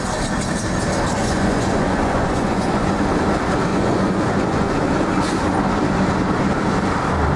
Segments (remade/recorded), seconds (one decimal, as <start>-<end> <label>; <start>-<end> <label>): 0.0-1.2 recorded; 1.2-3.0 remade; 3.0-3.7 recorded; 3.7-4.8 remade; 4.8-7.4 recorded